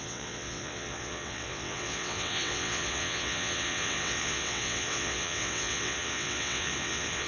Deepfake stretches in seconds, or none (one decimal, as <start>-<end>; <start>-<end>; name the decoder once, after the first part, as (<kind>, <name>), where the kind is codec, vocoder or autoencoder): 0.0-7.3 (vocoder, WaveNeXt)